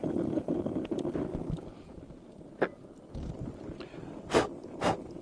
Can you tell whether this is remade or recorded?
recorded